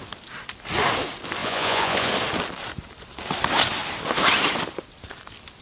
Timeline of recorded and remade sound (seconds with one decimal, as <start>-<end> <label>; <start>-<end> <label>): 0.0-1.4 recorded; 1.4-2.1 remade; 2.1-5.6 recorded